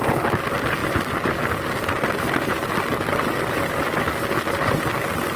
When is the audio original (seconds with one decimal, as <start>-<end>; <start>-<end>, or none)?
0.0-5.4